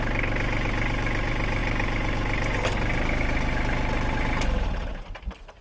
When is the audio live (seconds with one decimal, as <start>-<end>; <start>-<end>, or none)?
0.0-5.6